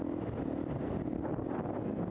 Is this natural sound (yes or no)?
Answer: yes